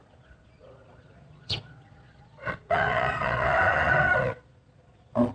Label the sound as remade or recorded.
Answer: remade